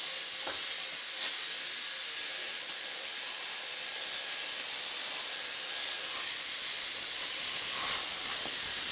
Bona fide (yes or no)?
yes